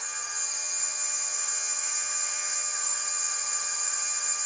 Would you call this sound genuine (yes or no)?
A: no